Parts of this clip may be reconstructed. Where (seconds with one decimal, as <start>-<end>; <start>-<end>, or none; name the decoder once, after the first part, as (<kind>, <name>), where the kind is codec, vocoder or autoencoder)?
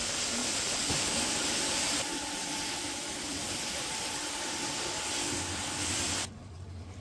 0.4-1.3 (vocoder, BigVGAN v2)